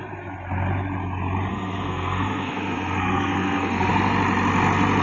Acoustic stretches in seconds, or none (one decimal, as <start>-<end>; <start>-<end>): 0.0-1.5; 3.9-5.0

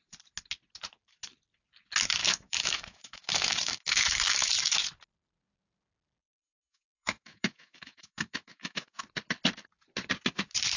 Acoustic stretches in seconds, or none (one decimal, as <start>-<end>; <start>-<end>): 0.0-2.2; 4.5-6.2; 9.0-10.8

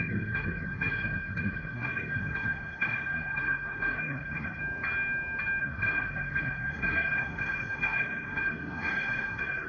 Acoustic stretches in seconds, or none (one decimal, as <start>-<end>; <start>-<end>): 4.6-5.6

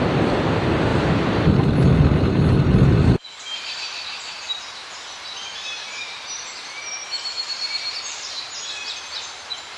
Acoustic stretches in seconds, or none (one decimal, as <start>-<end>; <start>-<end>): none

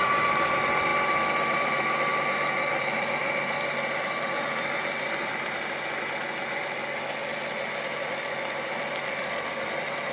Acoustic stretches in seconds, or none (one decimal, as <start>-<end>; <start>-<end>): 0.9-1.6; 2.1-2.7; 3.2-8.2